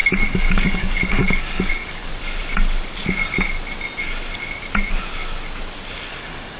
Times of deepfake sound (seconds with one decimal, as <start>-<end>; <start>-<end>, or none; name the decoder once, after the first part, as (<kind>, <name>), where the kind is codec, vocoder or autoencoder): 0.0-2.1 (codec, DAC); 6.1-6.6